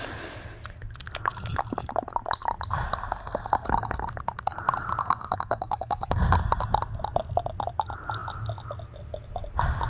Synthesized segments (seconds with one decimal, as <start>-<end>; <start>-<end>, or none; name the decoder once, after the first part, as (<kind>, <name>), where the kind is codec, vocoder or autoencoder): 3.2-4.1 (codec, SNAC); 5.0-6.4